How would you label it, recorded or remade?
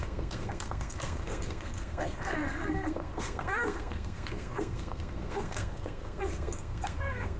remade